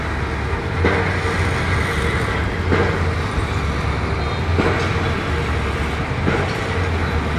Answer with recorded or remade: recorded